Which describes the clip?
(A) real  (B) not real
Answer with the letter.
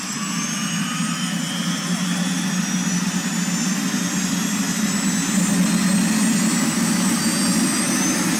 A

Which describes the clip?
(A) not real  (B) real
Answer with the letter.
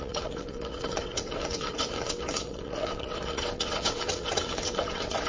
A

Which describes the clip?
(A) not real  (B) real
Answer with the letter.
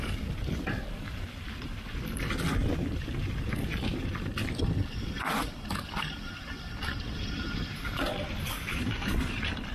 A